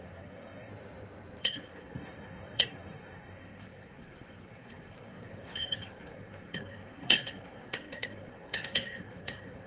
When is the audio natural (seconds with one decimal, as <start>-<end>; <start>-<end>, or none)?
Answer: 0.7-1.4